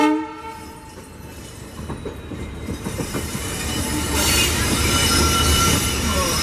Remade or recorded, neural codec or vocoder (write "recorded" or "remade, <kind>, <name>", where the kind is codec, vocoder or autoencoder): remade, vocoder, BigVGAN v2